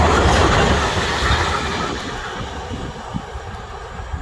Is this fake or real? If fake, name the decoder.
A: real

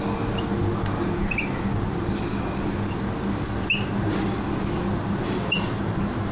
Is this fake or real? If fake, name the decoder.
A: real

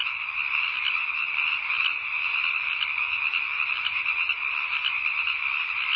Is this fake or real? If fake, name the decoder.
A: real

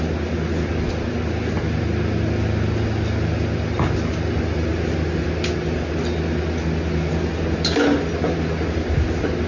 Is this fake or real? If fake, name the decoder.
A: real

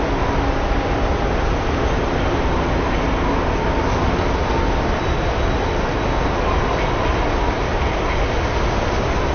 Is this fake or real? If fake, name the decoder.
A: real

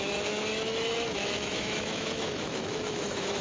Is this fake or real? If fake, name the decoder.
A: fake, autoencoder, DAC-VAE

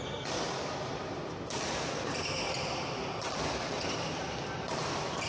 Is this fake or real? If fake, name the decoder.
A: real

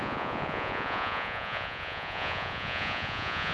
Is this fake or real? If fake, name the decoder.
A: fake, vocoder, Vocos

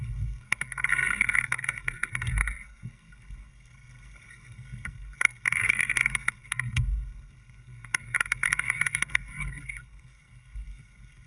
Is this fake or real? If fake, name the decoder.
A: fake, codec, SNAC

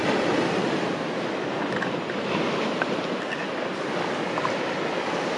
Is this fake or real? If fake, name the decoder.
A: real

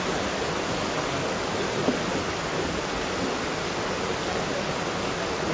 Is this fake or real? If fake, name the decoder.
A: real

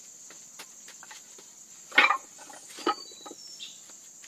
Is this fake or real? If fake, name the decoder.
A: real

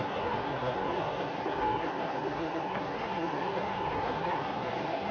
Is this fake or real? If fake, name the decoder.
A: fake, codec, SNAC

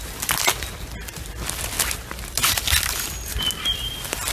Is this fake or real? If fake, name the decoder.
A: real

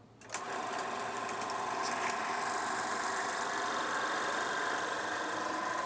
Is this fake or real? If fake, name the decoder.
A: real